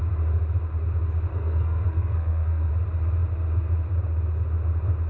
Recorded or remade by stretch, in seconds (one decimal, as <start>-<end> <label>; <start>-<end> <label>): 0.0-1.3 recorded; 1.3-2.7 remade; 2.7-5.1 recorded